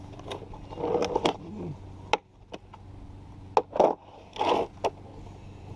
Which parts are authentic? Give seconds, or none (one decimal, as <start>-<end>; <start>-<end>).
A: 0.0-5.8